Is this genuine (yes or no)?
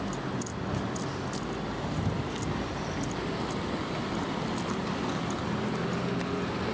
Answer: yes